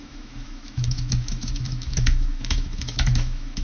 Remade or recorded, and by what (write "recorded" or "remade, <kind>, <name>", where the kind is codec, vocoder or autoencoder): remade, autoencoder, DAC-VAE